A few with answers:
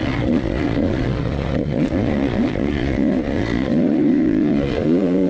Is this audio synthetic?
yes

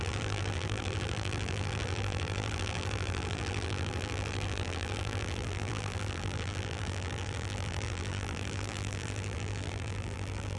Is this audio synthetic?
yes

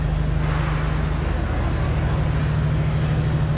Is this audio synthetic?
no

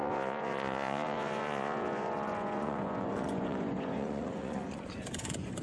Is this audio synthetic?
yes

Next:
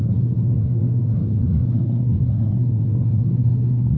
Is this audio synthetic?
yes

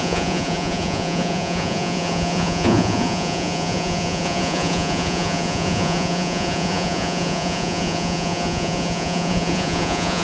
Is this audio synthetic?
yes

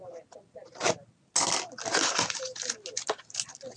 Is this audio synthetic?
no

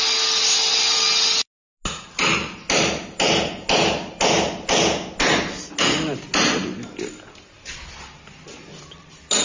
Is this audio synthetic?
no